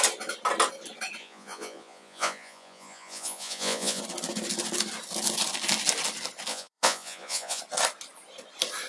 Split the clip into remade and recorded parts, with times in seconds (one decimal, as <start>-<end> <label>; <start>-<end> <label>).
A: 0.0-1.2 recorded; 1.2-4.0 remade; 4.0-6.5 recorded; 6.5-7.6 remade; 7.6-8.9 recorded